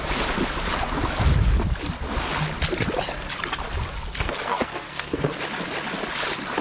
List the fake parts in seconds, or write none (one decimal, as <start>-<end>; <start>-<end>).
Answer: 4.1-5.4